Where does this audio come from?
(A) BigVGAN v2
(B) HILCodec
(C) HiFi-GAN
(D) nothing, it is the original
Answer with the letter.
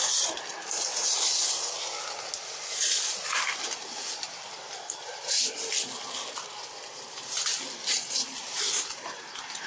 D